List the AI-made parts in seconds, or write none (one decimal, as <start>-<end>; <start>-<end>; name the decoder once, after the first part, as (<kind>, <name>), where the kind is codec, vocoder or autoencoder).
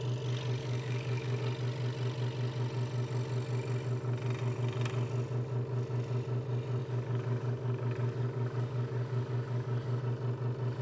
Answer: 0.6-1.4 (codec, DAC); 6.8-10.0